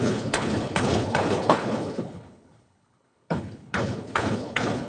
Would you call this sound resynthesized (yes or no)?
yes